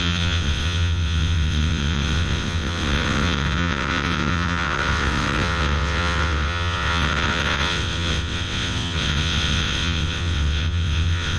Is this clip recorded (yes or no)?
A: no